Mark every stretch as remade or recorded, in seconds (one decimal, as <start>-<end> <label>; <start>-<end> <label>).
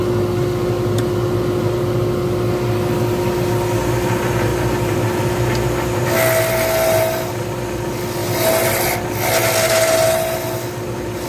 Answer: 0.0-11.3 recorded